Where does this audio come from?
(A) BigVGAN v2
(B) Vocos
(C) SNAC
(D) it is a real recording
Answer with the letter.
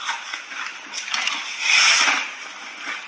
D